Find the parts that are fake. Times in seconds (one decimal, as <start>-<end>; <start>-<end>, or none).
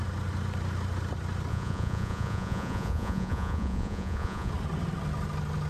1.5-4.5